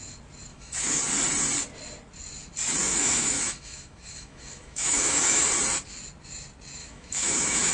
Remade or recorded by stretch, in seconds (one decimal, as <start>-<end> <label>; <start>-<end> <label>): 0.0-0.5 recorded; 0.5-1.0 remade; 1.0-2.8 recorded; 2.8-5.4 remade; 5.4-6.8 recorded; 6.8-7.7 remade

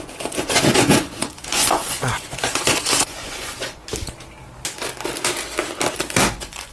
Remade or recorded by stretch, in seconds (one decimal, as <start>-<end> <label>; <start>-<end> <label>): 0.0-3.8 remade; 3.8-6.3 recorded; 6.3-6.7 remade